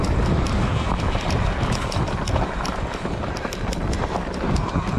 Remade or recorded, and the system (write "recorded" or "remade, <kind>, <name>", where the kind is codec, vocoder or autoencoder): recorded